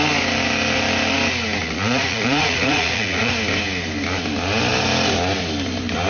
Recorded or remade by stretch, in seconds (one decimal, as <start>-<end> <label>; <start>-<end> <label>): 0.0-1.6 recorded; 1.6-3.3 remade; 3.3-6.1 recorded